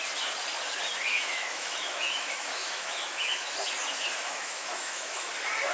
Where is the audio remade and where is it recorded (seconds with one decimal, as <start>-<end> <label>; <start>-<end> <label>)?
0.0-1.1 recorded; 1.1-3.5 remade; 3.5-4.2 recorded; 4.2-5.3 remade; 5.3-5.7 recorded